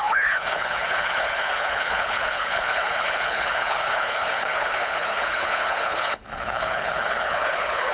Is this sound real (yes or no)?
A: no